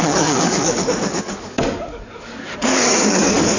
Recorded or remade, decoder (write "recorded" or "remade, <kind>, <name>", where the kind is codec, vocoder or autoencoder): remade, codec, DAC